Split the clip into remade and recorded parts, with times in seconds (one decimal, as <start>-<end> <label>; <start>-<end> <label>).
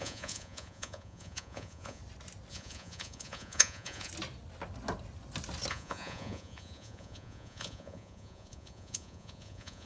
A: 0.0-2.0 remade; 2.0-2.5 recorded; 2.5-4.1 remade; 4.1-5.7 recorded; 5.7-9.9 remade